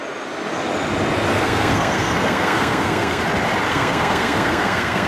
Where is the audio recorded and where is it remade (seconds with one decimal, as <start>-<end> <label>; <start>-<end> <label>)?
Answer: 0.0-1.3 recorded; 1.3-3.2 remade; 3.2-3.7 recorded; 3.7-5.1 remade